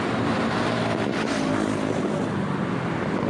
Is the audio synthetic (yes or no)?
no